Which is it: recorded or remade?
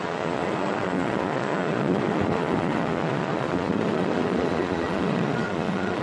remade